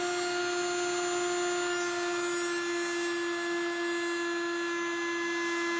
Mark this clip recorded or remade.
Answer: recorded